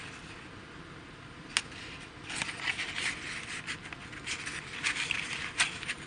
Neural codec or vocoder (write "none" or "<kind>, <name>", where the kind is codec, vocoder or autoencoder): none